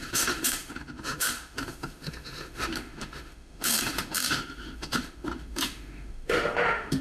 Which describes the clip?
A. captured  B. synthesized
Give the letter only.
B